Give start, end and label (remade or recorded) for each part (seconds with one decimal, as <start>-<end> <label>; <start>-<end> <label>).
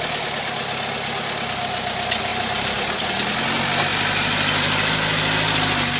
0.0-2.3 recorded; 2.3-3.0 remade; 3.0-6.0 recorded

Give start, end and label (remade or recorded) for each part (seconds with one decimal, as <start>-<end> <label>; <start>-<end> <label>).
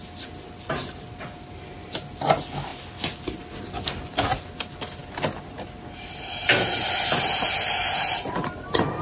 0.0-9.0 recorded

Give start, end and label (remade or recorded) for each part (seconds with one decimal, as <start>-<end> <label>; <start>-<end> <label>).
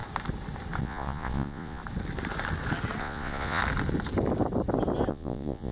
0.0-0.8 recorded; 0.8-1.8 remade; 1.8-3.0 recorded; 3.0-3.6 remade; 3.6-5.1 recorded; 5.1-5.7 remade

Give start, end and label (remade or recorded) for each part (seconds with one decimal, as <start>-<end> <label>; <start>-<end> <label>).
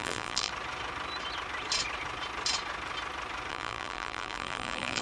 0.0-0.5 remade; 0.5-3.5 recorded; 3.5-5.0 remade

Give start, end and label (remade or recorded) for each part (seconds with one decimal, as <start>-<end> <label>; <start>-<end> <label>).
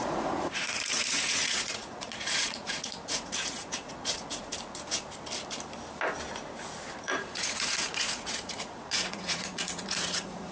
0.0-4.5 remade; 4.5-7.0 recorded; 7.0-10.5 remade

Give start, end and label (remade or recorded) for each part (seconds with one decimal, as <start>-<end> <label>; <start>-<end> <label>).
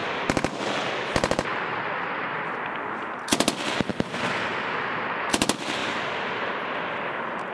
0.0-5.8 recorded; 5.8-6.9 remade; 6.9-7.5 recorded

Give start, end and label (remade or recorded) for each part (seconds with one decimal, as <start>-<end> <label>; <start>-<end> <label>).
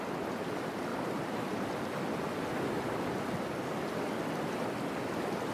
0.0-5.5 recorded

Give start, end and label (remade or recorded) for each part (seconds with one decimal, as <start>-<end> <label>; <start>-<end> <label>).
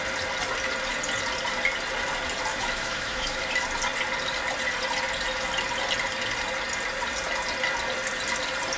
0.0-2.5 recorded; 2.5-3.4 remade; 3.4-8.8 recorded